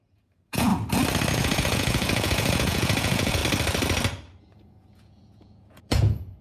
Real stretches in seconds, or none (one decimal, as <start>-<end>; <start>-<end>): 0.7-1.3; 3.4-4.4

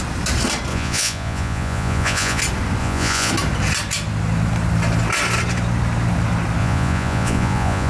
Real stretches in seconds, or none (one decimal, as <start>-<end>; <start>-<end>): 0.0-0.7; 2.4-2.8; 3.3-6.6

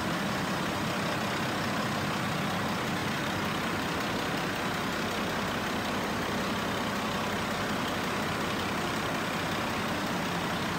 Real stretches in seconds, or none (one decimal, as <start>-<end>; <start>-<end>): 0.0-10.8

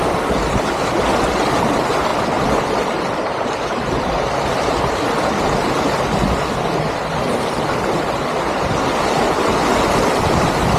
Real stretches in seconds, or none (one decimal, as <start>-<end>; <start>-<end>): 0.0-10.8

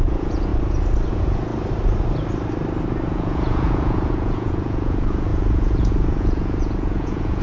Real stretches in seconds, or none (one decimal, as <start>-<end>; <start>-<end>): 0.5-1.1; 1.5-3.1

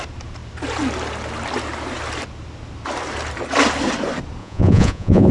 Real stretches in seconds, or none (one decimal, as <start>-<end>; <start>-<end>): 0.0-4.4

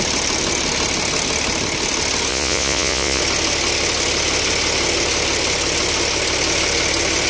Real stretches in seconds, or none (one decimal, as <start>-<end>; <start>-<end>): 0.0-2.3; 3.2-7.3

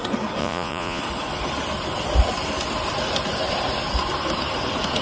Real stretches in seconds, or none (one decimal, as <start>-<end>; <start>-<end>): 0.0-0.4; 1.0-5.0